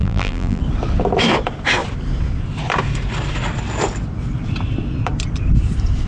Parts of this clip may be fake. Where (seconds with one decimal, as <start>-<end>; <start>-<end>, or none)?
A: 0.0-0.6